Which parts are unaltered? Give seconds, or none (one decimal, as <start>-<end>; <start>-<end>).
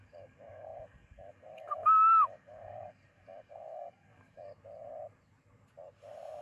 4.5-6.4